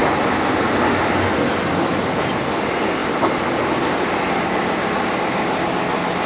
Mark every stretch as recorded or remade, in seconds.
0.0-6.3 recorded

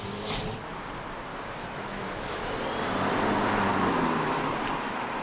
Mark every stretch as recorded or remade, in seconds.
0.0-1.3 recorded; 1.3-2.5 remade; 2.5-3.7 recorded; 3.7-4.3 remade; 4.3-5.2 recorded

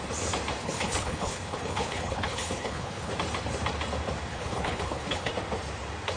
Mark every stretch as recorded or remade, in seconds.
0.0-0.6 recorded; 0.6-3.1 remade; 3.1-4.3 recorded; 4.3-5.3 remade; 5.3-6.2 recorded

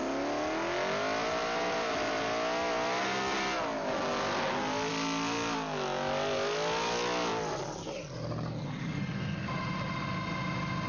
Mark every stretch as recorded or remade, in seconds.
0.0-10.9 recorded

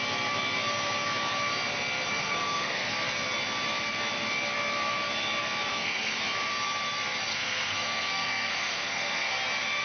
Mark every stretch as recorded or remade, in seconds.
0.0-2.2 recorded; 2.2-2.9 remade; 2.9-5.7 recorded; 5.7-6.2 remade; 6.2-7.3 recorded; 7.3-9.3 remade; 9.3-9.8 recorded